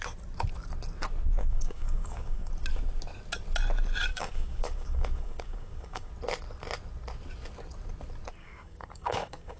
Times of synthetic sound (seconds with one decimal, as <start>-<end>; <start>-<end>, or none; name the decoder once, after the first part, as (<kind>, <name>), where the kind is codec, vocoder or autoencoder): 1.4-2.5 (codec, DAC); 4.1-6.1; 8.4-9.6